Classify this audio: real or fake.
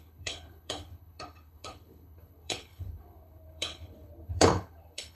fake